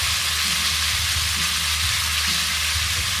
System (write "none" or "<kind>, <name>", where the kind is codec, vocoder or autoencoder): none